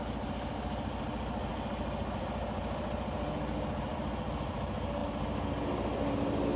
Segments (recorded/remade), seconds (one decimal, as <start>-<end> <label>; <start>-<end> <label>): 0.0-6.6 recorded